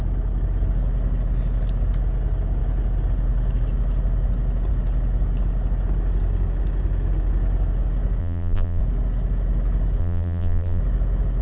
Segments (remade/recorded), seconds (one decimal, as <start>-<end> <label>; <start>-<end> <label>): 0.0-8.2 recorded; 8.2-8.8 remade; 8.8-10.0 recorded; 10.0-10.8 remade; 10.8-11.4 recorded

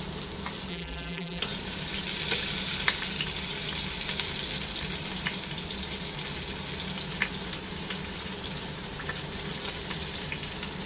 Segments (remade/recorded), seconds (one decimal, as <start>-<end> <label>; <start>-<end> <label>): 0.0-0.7 recorded; 0.7-1.4 remade; 1.4-10.9 recorded

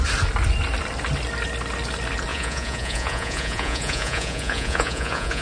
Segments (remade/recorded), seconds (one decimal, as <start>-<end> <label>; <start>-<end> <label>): 0.0-2.3 recorded; 2.3-5.4 remade